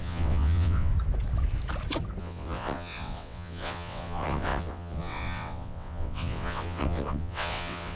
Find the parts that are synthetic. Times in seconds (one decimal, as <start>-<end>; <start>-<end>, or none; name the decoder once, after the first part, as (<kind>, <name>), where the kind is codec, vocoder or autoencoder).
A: 0.0-0.9 (vocoder, WaveNeXt); 2.2-8.0